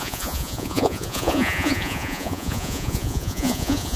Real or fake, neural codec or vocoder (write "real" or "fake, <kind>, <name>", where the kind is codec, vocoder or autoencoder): fake, vocoder, Vocos